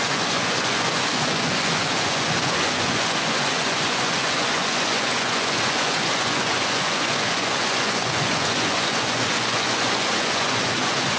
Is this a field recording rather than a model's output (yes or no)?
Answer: no